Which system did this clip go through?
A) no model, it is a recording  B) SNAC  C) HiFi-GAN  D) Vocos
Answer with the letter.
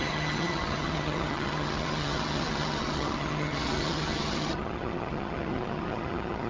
C